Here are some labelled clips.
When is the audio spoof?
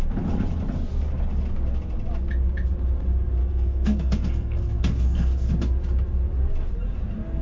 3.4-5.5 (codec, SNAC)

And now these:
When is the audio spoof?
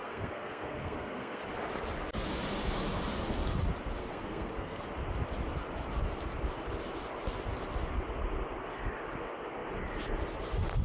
0.0-1.4 (codec, SNAC); 4.0-4.8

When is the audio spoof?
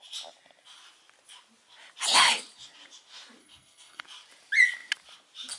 3.4-4.0 (codec, SNAC)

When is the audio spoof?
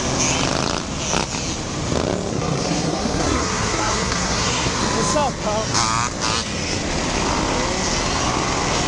2.3-4.8 (codec, SNAC)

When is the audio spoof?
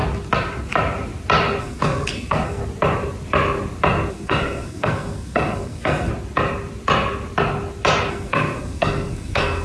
1.6-2.6 (codec, SNAC); 4.1-6.1; 8.1-9.6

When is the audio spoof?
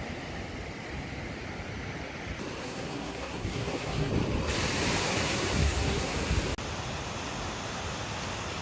2.6-4.1 (codec, SNAC); 5.0-6.2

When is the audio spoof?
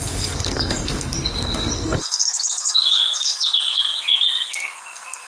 0.0-5.3 (codec, SNAC)